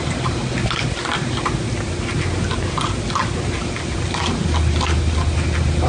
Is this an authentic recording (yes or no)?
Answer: yes